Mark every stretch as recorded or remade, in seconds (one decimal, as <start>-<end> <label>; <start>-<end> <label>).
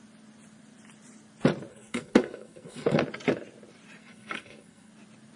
0.0-1.7 recorded; 1.7-3.0 remade; 3.0-4.0 recorded; 4.0-4.9 remade; 4.9-5.4 recorded